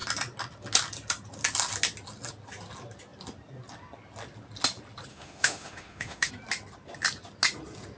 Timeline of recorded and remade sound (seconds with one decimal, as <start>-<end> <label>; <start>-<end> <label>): 0.0-5.1 recorded; 5.1-6.3 remade; 6.3-8.0 recorded